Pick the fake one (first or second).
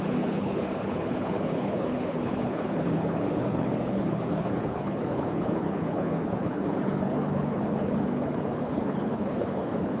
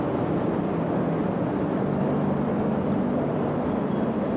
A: first